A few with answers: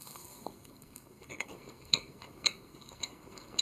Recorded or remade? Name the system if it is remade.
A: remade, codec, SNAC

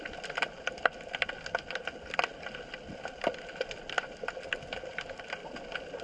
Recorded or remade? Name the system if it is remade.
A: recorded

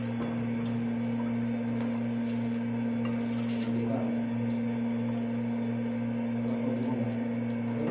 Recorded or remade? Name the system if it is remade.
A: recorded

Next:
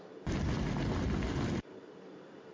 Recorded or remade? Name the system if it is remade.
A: recorded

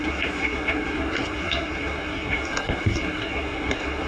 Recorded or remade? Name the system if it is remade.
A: remade, codec, SNAC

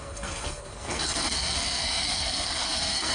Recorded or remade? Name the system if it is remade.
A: remade, codec, SNAC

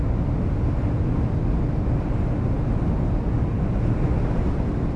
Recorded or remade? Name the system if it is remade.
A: recorded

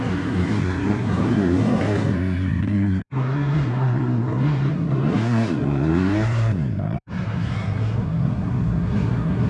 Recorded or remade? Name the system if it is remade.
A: remade, codec, SNAC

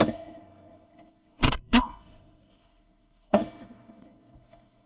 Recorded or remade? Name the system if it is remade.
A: remade, codec, SNAC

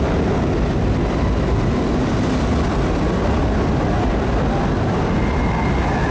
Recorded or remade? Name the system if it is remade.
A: recorded